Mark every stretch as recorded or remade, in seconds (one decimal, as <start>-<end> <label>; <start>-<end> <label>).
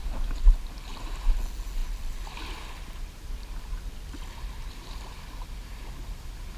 0.0-1.8 recorded; 1.8-5.8 remade; 5.8-6.6 recorded